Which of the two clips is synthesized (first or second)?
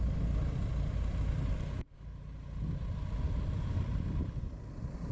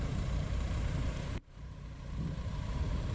second